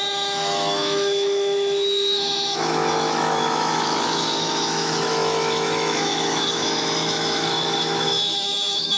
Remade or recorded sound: remade